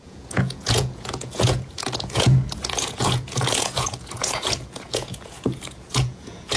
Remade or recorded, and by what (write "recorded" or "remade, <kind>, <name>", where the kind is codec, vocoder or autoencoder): remade, vocoder, Vocos